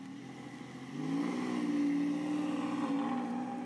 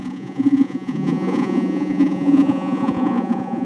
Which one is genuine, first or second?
first